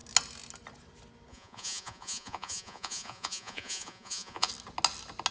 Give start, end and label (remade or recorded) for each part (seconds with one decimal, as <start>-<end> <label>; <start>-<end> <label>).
0.0-1.3 recorded; 1.3-4.5 remade; 4.5-5.3 recorded